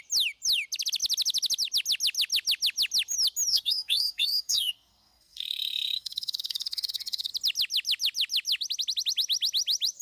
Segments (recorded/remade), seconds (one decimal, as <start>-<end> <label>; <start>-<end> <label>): 0.0-3.5 recorded; 3.5-7.3 remade; 7.3-10.0 recorded